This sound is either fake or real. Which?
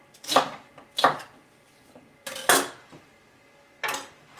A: real